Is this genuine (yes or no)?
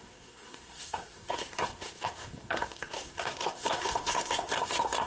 no